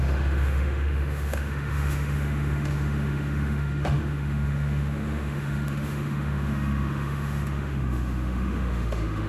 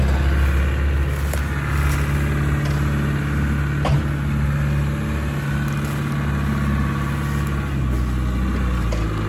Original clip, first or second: second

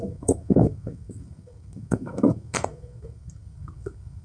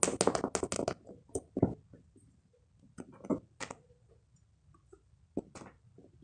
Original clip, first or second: second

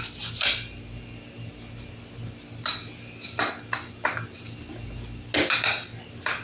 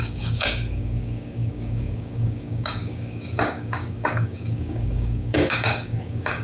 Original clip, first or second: first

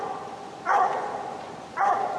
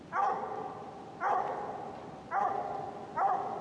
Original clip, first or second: second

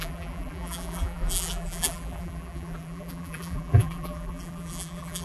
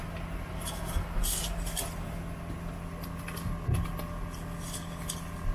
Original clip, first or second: second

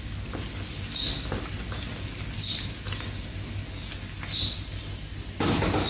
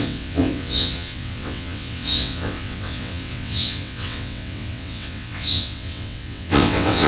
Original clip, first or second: first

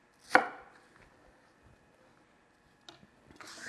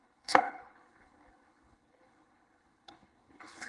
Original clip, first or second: first